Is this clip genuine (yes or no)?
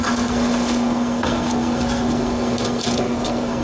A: no